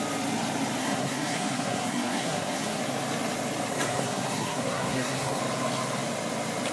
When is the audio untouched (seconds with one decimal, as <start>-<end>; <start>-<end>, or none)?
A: 0.0-0.8; 2.8-3.7; 5.4-6.7